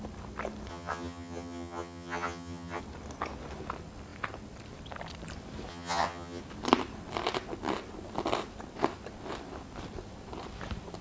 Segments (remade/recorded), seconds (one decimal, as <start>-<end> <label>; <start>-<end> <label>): 0.0-0.7 recorded; 0.7-2.8 remade; 2.8-5.7 recorded; 5.7-6.4 remade; 6.4-11.0 recorded